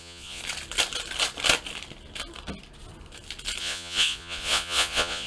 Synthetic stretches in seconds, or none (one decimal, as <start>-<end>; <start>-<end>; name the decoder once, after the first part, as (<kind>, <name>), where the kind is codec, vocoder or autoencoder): 0.0-0.4 (vocoder, Vocos); 3.6-5.3

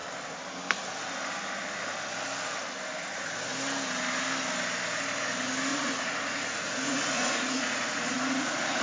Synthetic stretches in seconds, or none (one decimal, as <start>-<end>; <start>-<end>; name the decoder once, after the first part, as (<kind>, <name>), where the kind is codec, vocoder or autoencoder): 5.7-8.8 (vocoder, Vocos)

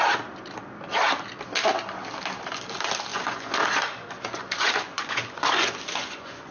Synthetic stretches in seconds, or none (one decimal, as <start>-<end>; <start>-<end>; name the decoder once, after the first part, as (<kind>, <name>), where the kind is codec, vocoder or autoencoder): 3.1-6.5 (vocoder, Vocos)

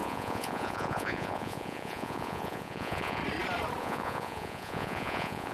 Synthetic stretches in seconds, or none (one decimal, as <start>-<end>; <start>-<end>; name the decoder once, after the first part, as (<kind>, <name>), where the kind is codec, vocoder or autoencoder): 0.0-3.2 (vocoder, Vocos); 3.8-5.5

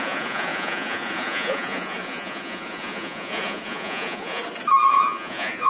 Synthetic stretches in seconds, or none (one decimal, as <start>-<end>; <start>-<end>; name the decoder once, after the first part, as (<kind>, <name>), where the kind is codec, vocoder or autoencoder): 0.0-4.4 (vocoder, Vocos); 4.9-5.7